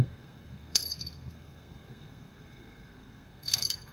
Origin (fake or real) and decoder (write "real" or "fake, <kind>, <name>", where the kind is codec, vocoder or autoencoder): fake, codec, SNAC